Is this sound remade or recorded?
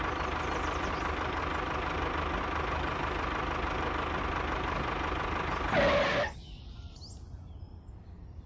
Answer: recorded